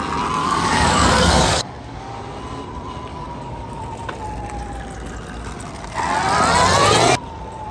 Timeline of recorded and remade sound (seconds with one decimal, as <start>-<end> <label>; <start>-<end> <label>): 0.0-0.4 recorded; 0.4-2.2 remade; 2.2-3.1 recorded; 3.1-3.8 remade; 3.8-7.7 recorded